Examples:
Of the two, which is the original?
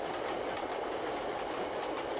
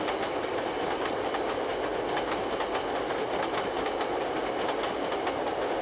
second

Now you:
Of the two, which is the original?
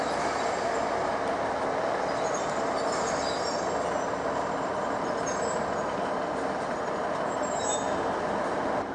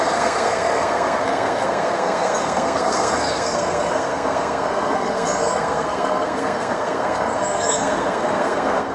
first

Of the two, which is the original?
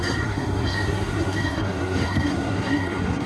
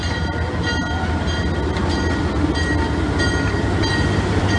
second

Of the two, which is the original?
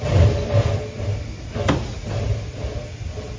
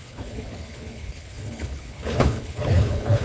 first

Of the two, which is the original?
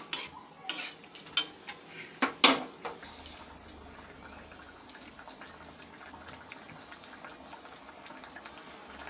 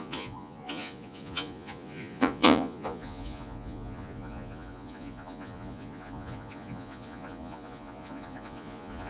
first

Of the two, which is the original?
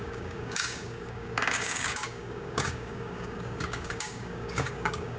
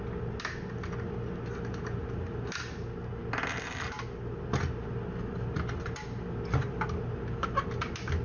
second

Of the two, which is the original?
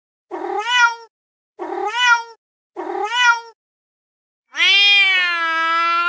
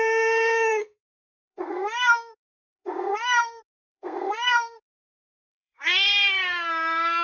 first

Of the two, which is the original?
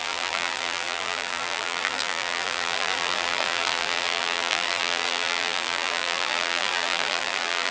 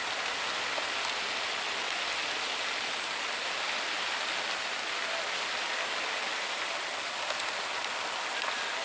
second